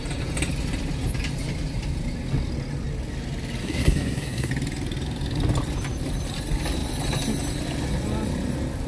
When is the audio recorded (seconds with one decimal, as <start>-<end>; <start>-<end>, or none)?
0.0-3.6; 4.5-8.9